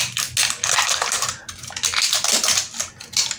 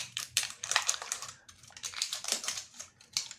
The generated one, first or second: second